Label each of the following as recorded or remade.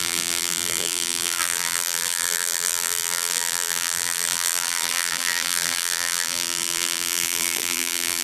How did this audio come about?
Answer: remade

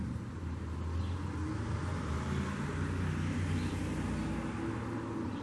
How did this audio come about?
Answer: recorded